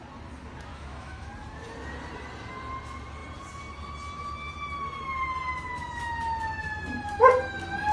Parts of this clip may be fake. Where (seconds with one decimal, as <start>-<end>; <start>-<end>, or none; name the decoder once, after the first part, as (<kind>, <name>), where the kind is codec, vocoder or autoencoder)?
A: 0.7-1.3 (autoencoder, DAC-VAE)